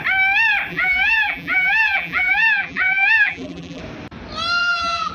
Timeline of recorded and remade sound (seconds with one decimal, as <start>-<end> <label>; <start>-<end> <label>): 0.0-0.7 recorded; 0.7-3.8 remade; 3.8-4.6 recorded; 4.6-5.1 remade

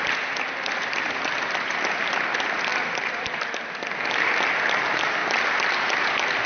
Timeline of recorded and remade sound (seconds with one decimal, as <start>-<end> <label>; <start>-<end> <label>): 0.0-5.2 recorded; 5.2-6.5 remade

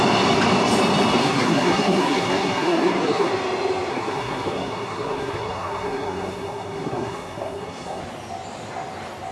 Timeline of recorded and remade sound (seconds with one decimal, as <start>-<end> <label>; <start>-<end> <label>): 0.0-1.2 recorded; 1.2-3.3 remade; 3.3-3.9 recorded; 3.9-8.0 remade; 8.0-9.3 recorded

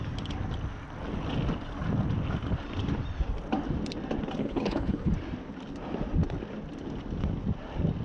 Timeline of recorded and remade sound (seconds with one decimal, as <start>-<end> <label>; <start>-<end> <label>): 0.0-4.4 recorded; 4.4-5.1 remade; 5.1-8.0 recorded

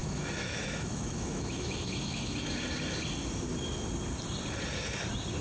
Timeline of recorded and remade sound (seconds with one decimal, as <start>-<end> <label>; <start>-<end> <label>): 0.0-2.6 remade; 2.6-5.4 recorded

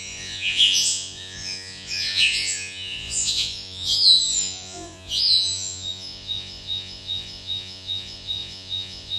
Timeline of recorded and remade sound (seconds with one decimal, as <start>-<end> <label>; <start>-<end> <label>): 0.0-9.2 remade